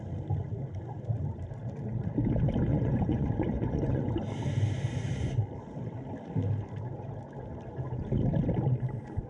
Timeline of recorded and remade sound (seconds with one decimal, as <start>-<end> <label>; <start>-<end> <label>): 0.0-2.7 recorded; 2.7-4.1 remade; 4.1-9.3 recorded